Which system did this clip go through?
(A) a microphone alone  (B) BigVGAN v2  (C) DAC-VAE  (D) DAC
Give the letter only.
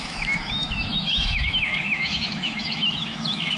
C